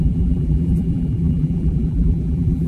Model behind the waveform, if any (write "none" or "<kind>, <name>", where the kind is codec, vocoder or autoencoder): vocoder, BigVGAN v2